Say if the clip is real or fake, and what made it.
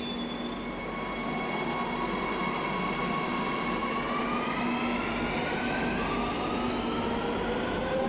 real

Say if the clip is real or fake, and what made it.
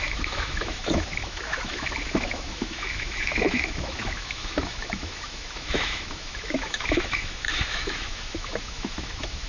fake, autoencoder, DAC-VAE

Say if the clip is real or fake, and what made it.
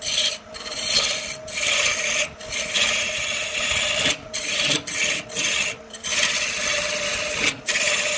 real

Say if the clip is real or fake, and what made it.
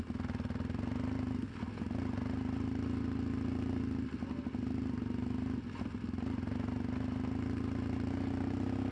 real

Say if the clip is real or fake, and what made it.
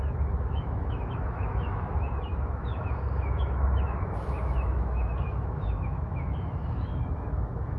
fake, autoencoder, DAC-VAE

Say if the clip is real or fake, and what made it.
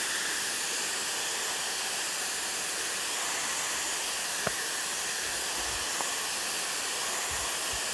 real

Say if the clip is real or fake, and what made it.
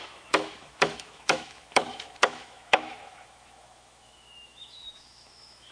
fake, autoencoder, DAC-VAE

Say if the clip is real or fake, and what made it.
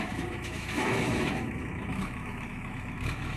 fake, autoencoder, DAC-VAE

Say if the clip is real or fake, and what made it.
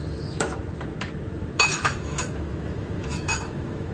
fake, autoencoder, DAC-VAE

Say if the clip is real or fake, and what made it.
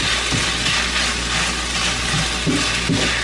real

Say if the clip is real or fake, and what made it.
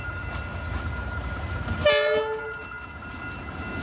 real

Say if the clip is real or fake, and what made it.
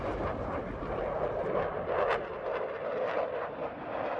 real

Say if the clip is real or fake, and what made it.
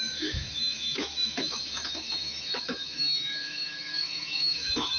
fake, autoencoder, DAC-VAE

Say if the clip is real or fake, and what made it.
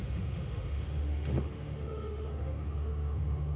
fake, autoencoder, DAC-VAE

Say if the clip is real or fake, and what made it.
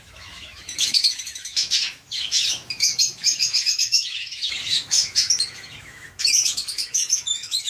fake, autoencoder, DAC-VAE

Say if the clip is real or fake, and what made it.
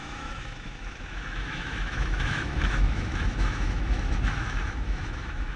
fake, autoencoder, DAC-VAE